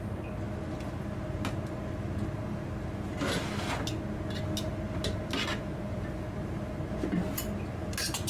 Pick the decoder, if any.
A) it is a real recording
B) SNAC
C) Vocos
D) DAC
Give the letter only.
A